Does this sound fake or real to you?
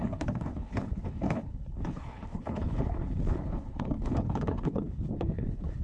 fake